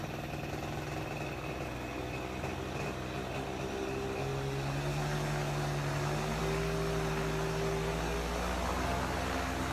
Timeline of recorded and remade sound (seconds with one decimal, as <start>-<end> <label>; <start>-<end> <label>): 0.0-9.7 recorded

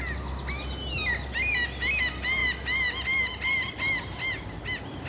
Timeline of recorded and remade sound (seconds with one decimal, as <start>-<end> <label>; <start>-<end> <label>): 0.0-5.1 recorded

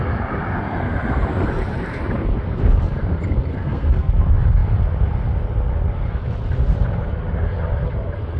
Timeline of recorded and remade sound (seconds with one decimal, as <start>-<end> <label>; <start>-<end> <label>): 0.0-3.5 recorded; 3.5-4.1 remade; 4.1-8.4 recorded

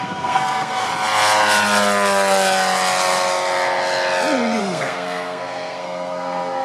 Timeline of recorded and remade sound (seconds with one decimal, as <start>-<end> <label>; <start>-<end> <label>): 0.0-0.9 remade; 0.9-4.6 recorded; 4.6-6.6 remade

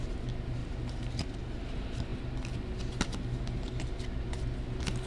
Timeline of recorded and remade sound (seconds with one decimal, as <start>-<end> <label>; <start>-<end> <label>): 0.0-0.6 recorded; 0.6-1.4 remade; 1.4-5.1 recorded

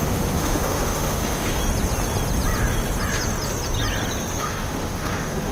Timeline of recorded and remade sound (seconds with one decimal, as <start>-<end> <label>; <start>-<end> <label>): 0.0-1.6 remade; 1.6-4.4 recorded; 4.4-5.5 remade

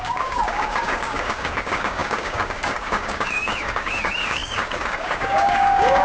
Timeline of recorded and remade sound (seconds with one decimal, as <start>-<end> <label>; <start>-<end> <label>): 0.0-6.0 remade